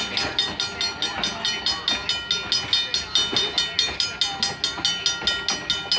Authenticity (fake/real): real